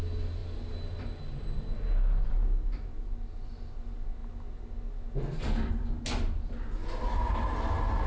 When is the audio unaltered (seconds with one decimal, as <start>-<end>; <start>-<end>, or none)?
0.0-8.1